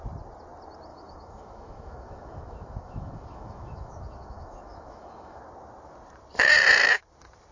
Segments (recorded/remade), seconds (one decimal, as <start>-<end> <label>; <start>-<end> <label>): 0.0-0.9 recorded; 0.9-5.4 remade; 5.4-7.5 recorded